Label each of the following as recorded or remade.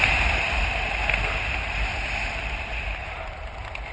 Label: recorded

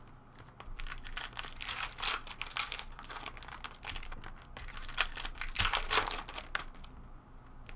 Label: recorded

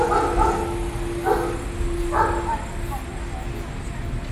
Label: recorded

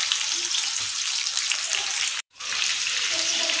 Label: remade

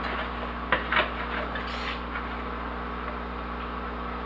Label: recorded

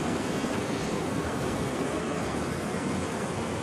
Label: remade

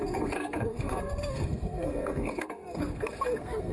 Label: remade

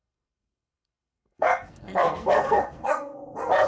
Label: remade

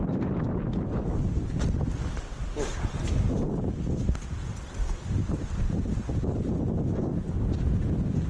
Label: recorded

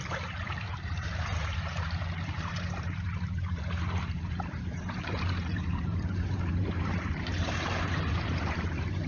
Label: remade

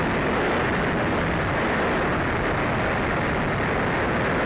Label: recorded